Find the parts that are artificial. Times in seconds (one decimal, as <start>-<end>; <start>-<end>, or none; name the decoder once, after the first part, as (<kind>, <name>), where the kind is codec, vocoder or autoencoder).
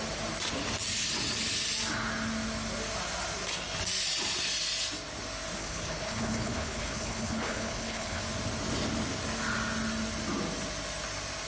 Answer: 5.6-8.2 (codec, HILCodec)